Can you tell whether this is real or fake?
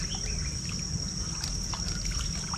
real